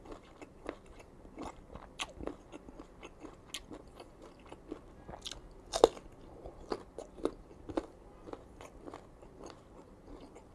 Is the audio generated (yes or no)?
no